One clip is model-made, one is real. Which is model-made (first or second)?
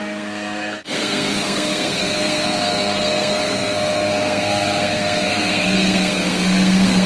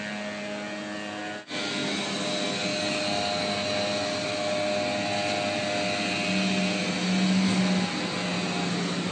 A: first